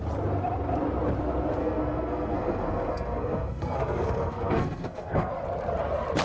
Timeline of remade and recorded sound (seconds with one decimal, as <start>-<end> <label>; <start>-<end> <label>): 0.0-1.6 recorded; 1.6-5.3 remade; 5.3-6.2 recorded